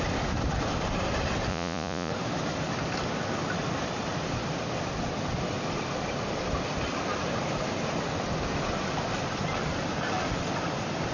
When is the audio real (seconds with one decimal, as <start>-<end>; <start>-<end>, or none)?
0.0-1.5; 2.1-11.1